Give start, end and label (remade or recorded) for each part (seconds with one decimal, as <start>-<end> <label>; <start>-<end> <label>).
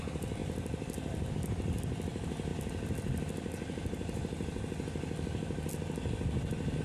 0.0-0.4 recorded; 0.4-1.3 remade; 1.3-6.8 recorded